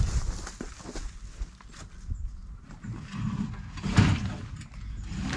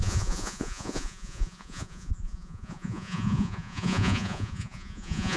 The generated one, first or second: second